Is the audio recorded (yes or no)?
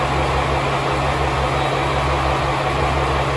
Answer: yes